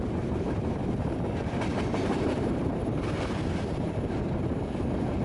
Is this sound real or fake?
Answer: fake